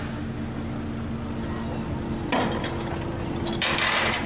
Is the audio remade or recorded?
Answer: recorded